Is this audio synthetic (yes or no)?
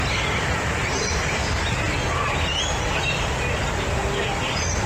no